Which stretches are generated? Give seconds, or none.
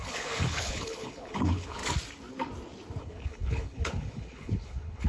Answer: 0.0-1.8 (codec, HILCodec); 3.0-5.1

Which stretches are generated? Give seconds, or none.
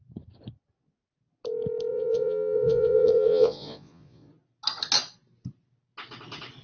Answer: 1.9-4.3 (vocoder, Vocos)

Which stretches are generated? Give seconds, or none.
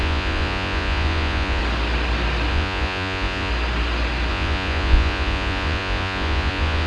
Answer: 0.0-1.6 (vocoder, Vocos); 2.5-3.5; 4.3-6.9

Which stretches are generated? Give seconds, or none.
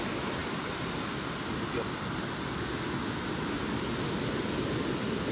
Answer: none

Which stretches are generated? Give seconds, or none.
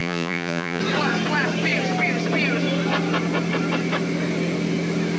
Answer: 0.0-0.8 (vocoder, Vocos)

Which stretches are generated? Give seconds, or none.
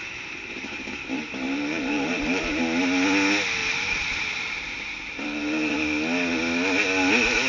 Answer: 0.0-2.6 (vocoder, BigVGAN v2); 3.6-5.7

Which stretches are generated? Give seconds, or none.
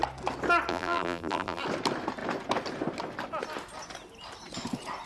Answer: 0.7-1.6 (vocoder, BigVGAN v2)